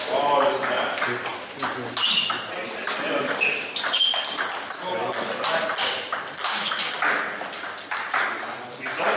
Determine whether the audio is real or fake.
real